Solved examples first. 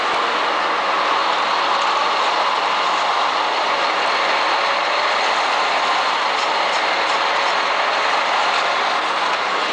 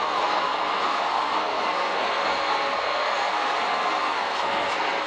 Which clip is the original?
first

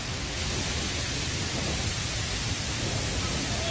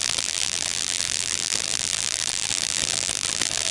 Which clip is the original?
first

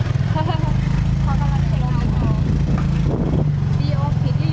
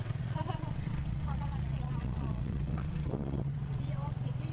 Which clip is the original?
first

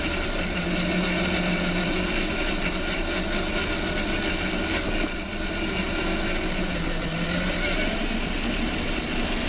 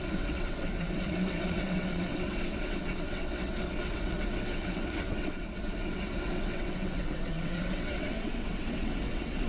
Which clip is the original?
first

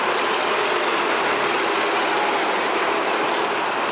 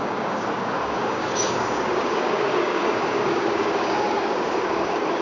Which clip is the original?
first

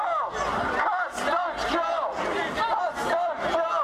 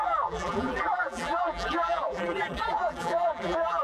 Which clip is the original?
first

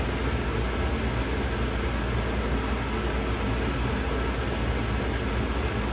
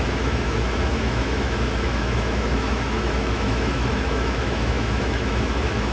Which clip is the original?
first